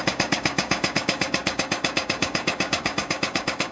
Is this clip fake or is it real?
fake